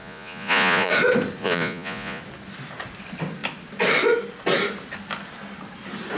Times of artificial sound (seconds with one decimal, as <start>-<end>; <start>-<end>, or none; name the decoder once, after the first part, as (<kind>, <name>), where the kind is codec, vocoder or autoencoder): 0.0-0.9 (vocoder, Vocos); 1.4-2.2